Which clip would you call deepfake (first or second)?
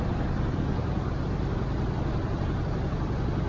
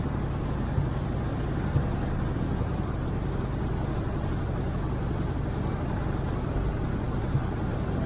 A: first